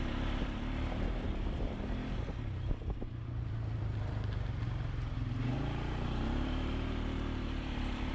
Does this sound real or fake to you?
fake